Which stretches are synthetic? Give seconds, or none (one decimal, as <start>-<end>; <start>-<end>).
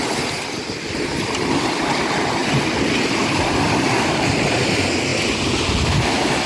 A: none